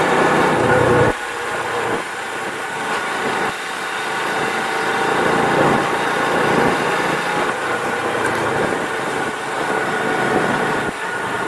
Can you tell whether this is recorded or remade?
recorded